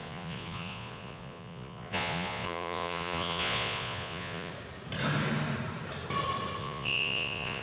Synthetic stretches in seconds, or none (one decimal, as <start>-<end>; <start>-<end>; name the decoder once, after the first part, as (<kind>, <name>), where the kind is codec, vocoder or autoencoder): 0.0-4.5 (vocoder, Vocos); 6.6-7.6